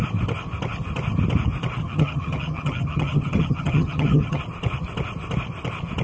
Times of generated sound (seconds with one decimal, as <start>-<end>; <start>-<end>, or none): 1.8-4.4